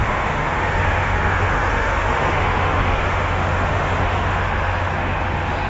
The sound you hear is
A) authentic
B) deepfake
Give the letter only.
B